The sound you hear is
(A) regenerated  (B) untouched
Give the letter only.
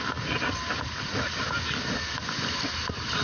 B